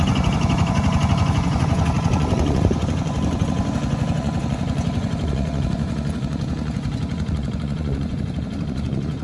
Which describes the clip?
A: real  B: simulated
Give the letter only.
B